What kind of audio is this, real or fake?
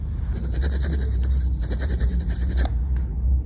fake